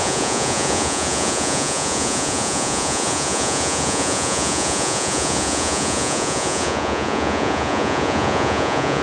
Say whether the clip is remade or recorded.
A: remade